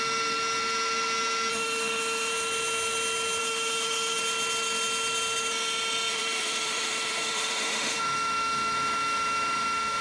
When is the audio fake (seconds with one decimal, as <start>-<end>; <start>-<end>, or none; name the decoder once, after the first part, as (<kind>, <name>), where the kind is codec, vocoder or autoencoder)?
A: 1.5-2.3 (autoencoder, DAC-VAE); 3.4-4.2; 6.1-10.0